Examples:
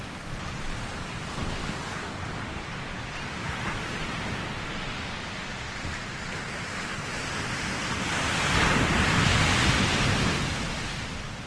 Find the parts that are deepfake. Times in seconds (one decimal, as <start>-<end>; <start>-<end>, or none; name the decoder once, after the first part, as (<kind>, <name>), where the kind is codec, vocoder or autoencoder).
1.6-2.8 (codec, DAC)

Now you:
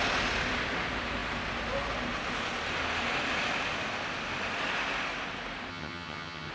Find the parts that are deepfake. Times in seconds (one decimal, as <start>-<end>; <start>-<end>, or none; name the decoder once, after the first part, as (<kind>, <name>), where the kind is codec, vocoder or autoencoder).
5.7-6.5 (vocoder, HiFi-GAN)

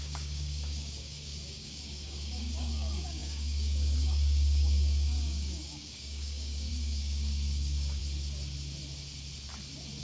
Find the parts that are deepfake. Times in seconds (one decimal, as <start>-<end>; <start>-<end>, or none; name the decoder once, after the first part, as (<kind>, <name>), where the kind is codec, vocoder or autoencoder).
0.0-8.0 (codec, DAC)

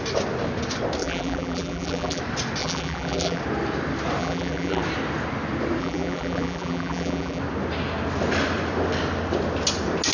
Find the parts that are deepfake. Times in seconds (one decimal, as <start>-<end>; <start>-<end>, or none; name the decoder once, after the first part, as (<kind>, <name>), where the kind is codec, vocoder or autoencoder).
1.0-2.2 (vocoder, BigVGAN v2); 2.6-3.4; 4.2-4.8; 5.8-7.4

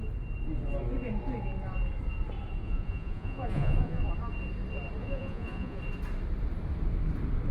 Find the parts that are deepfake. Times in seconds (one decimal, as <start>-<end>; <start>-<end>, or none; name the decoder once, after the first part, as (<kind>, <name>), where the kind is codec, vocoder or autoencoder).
2.6-4.1 (vocoder, Vocos); 5.0-5.8

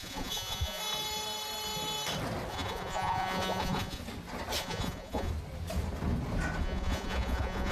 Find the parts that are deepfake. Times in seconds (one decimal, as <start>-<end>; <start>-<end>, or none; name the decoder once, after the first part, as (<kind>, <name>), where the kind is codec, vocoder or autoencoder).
0.0-0.8 (vocoder, Vocos); 2.5-4.0; 4.6-5.3; 6.6-7.7

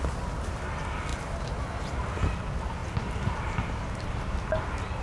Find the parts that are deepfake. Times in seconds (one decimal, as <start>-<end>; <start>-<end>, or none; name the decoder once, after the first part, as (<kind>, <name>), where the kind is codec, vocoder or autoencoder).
none